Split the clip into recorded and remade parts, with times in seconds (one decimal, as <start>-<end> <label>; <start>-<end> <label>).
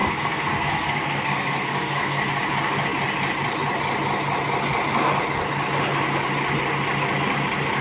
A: 0.0-2.2 remade; 2.2-7.8 recorded